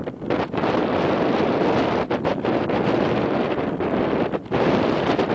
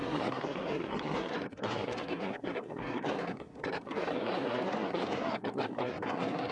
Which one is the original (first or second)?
first